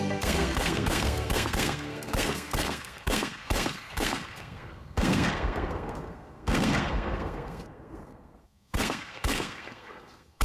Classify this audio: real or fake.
fake